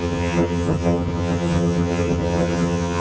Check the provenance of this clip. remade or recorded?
remade